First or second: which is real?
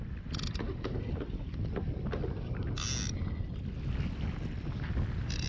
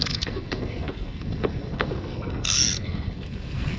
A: first